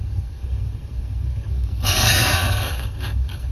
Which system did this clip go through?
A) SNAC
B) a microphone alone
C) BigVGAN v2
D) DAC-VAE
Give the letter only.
A